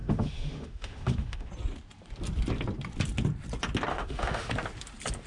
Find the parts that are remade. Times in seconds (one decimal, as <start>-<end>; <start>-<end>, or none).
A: 0.0-1.5; 3.9-4.5